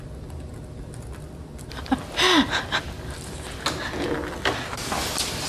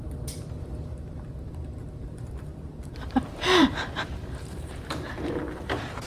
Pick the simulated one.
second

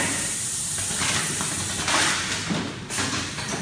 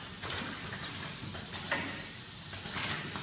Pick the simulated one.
first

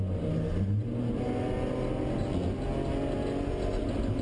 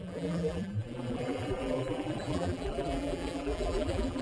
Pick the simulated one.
second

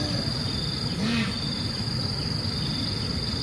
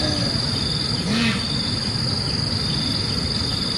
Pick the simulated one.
first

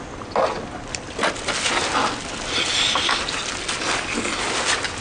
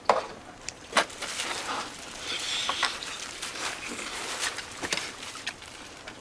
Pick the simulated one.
second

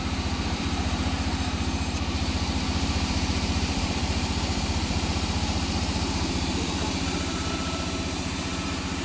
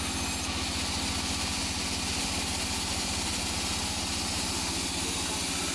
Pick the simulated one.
first